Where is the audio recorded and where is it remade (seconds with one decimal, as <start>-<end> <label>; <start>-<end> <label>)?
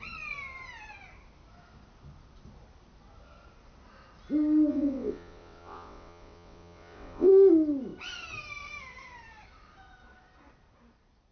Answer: 0.0-4.7 recorded; 4.7-7.3 remade; 7.3-11.3 recorded